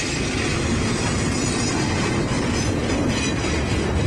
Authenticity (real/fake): real